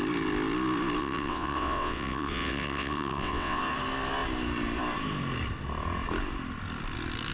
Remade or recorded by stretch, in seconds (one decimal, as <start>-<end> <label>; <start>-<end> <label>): 0.0-1.0 recorded; 1.0-3.6 remade; 3.6-7.3 recorded